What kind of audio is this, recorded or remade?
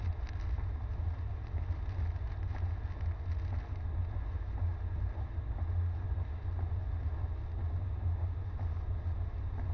recorded